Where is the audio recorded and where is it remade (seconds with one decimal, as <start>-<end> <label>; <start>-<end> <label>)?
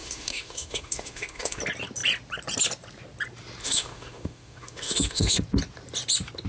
0.0-1.6 remade; 1.6-3.6 recorded; 3.6-5.4 remade; 5.4-6.5 recorded